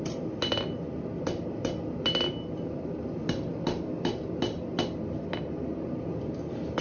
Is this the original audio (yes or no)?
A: yes